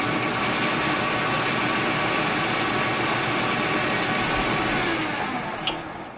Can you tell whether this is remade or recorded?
recorded